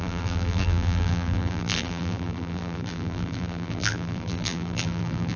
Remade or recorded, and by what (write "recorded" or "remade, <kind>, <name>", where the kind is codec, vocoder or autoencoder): remade, vocoder, BigVGAN v2